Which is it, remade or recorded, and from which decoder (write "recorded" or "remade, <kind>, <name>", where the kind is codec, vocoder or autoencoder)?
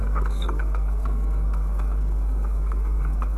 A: remade, codec, SNAC